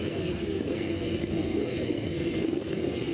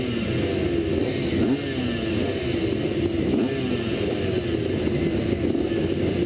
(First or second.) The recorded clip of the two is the second